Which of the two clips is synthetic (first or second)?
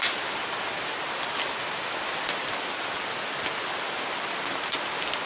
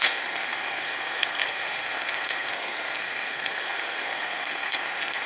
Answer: second